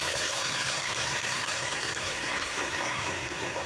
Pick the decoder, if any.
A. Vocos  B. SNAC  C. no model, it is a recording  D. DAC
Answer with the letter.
B